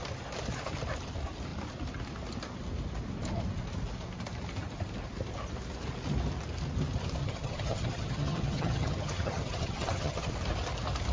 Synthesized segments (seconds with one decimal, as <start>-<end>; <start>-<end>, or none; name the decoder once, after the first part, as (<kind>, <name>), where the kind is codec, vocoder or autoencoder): 7.2-10.3 (vocoder, HiFi-GAN)